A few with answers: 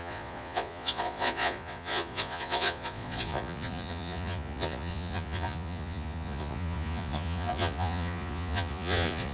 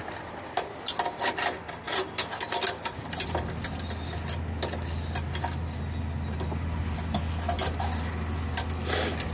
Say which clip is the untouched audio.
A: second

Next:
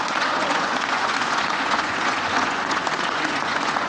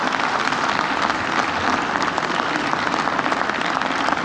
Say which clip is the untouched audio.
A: second